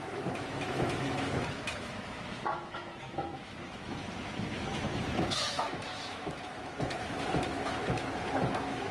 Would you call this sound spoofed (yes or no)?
yes